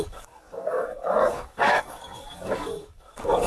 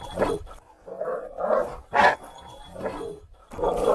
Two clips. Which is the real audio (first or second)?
second